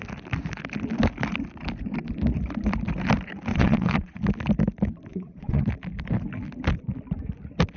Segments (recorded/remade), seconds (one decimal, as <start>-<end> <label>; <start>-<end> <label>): 0.0-3.5 recorded; 3.5-4.2 remade; 4.2-5.1 recorded; 5.1-5.6 remade; 5.6-7.8 recorded